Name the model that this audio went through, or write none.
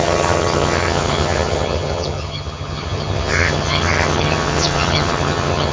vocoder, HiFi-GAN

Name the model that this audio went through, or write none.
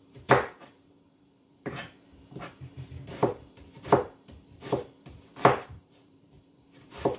vocoder, BigVGAN v2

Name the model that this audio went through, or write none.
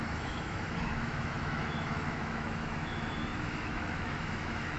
autoencoder, DAC-VAE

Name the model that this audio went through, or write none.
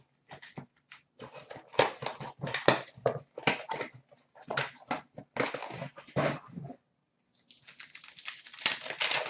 none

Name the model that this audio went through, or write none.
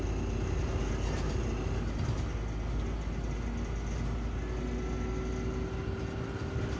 none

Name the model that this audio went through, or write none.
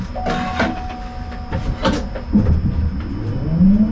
none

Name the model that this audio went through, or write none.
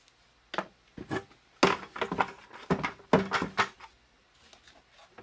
none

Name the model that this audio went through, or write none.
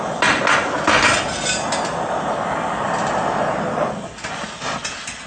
none